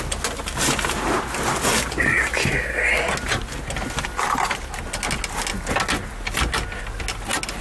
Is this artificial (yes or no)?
no